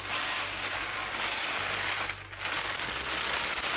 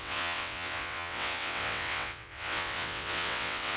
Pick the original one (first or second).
first